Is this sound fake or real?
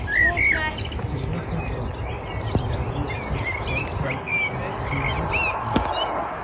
real